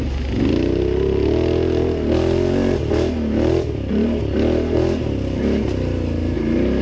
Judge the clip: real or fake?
real